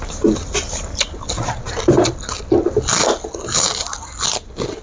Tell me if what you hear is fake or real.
real